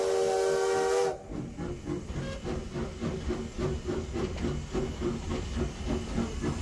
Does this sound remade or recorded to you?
recorded